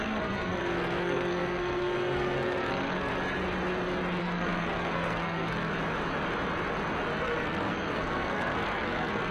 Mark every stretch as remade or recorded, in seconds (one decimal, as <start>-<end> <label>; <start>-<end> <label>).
0.0-3.1 remade; 3.1-4.2 recorded; 4.2-5.7 remade; 5.7-7.2 recorded; 7.2-9.3 remade